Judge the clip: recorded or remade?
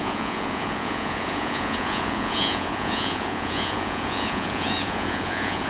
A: remade